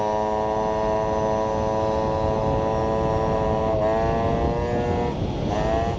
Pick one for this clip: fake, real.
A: real